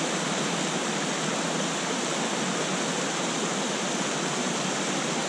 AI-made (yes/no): no